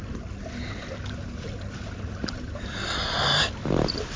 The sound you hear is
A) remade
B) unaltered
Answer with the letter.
B